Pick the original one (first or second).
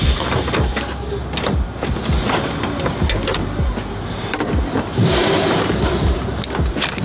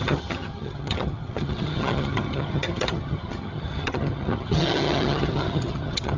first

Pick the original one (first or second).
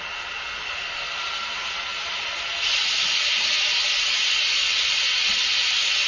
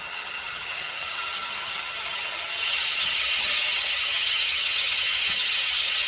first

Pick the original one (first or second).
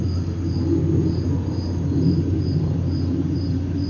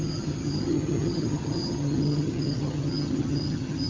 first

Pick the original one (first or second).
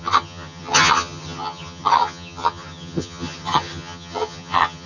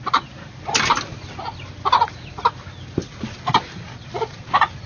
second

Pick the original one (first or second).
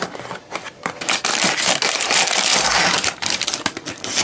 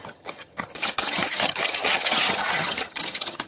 first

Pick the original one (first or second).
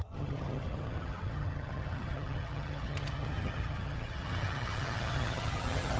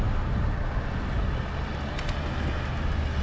second